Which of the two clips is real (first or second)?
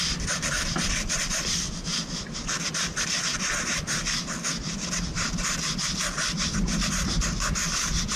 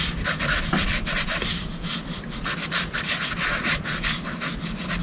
second